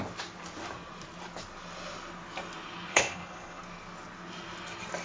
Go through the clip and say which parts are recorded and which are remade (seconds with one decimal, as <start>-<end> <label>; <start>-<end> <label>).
0.0-2.9 recorded; 2.9-3.6 remade; 3.6-5.0 recorded